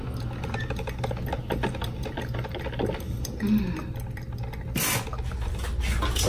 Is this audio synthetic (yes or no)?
no